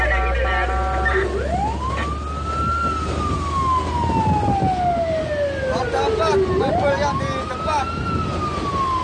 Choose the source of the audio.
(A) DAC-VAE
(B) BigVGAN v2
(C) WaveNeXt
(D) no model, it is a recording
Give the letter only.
D